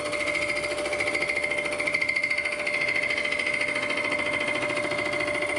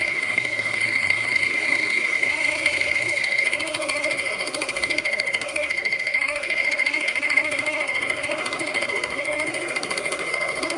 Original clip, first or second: first